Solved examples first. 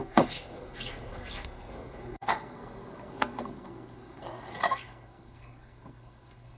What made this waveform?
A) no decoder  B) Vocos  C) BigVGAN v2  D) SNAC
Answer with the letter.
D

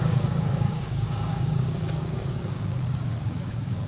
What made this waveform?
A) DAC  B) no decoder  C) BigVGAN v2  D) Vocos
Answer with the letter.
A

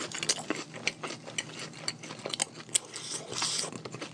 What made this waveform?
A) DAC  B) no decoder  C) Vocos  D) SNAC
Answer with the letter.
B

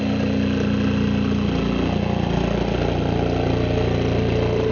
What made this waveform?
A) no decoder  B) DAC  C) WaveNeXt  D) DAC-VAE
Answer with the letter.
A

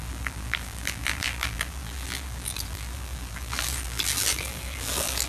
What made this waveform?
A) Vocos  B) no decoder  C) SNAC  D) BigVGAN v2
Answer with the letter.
D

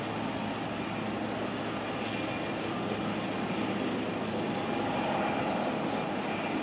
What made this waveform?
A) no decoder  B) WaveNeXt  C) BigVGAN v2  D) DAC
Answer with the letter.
A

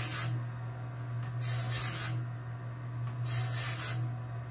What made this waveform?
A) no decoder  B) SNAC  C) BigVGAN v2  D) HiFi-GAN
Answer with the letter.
A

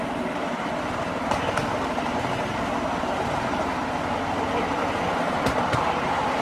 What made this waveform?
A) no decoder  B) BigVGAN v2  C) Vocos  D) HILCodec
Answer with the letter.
A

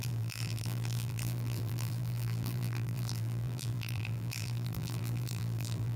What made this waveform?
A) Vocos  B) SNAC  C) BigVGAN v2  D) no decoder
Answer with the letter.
C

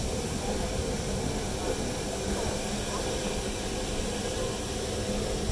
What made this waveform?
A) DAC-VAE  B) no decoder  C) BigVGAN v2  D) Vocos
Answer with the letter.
B